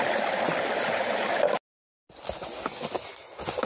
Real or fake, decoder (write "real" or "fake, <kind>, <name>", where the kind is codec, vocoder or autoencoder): real